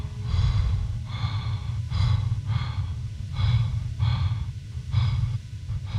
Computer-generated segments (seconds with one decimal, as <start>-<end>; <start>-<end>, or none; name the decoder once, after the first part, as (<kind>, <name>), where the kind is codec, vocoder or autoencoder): none